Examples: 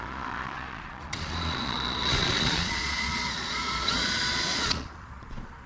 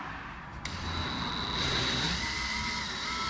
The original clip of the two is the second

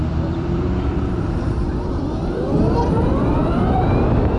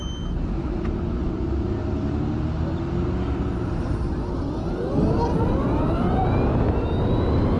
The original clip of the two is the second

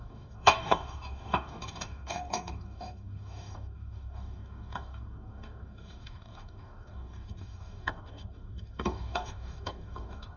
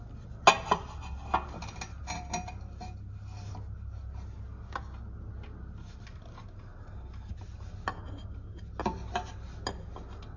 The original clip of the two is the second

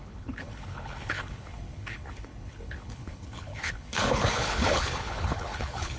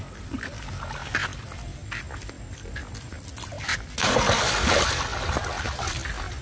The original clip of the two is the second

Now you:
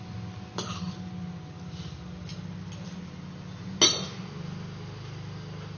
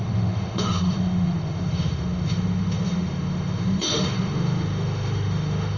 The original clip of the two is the first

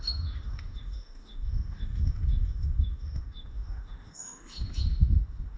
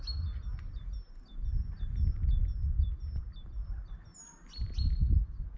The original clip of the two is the second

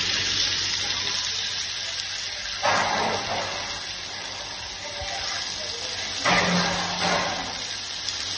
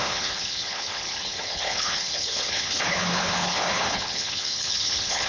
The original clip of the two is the first